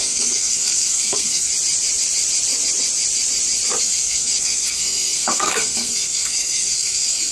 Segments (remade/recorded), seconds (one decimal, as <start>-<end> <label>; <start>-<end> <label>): 0.0-1.5 remade; 1.5-3.8 recorded; 3.8-7.3 remade